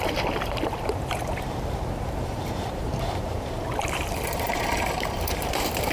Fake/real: fake